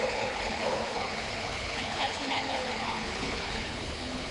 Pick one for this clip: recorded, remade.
remade